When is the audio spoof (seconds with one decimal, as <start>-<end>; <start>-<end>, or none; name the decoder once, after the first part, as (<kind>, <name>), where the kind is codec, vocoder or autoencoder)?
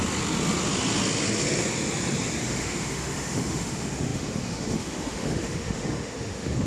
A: 2.5-6.7 (autoencoder, DAC-VAE)